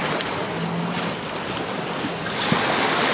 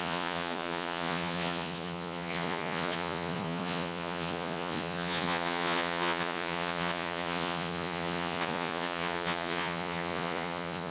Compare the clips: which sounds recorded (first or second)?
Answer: first